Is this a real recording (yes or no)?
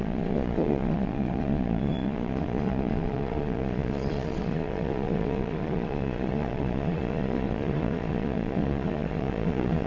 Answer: no